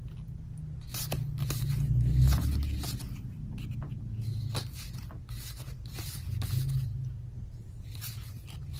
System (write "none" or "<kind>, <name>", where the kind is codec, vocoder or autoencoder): none